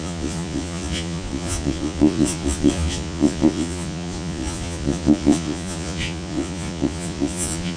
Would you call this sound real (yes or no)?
no